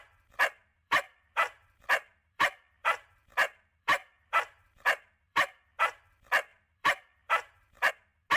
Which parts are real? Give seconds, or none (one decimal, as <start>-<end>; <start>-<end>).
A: 0.0-0.7; 5.6-6.5; 7.9-8.4